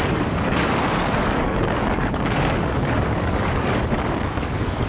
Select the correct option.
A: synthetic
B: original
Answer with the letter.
A